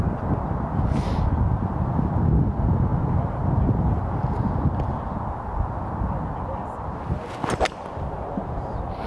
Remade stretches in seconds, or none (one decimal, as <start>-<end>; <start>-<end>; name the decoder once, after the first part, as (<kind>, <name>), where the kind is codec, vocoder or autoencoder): none